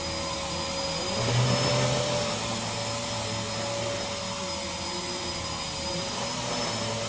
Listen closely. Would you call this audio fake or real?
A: real